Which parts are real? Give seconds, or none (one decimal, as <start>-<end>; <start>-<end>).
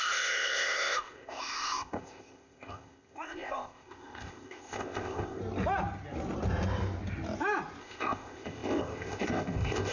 5.4-7.8